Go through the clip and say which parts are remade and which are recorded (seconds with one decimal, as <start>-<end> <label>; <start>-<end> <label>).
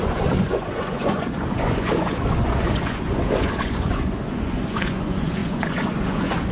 0.0-6.5 remade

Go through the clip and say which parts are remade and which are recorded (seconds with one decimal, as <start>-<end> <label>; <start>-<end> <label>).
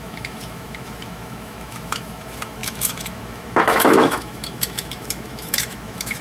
0.0-6.2 remade